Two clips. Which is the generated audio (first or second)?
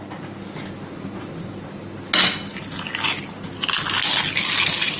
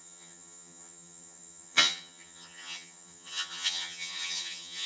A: second